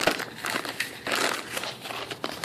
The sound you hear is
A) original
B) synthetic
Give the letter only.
A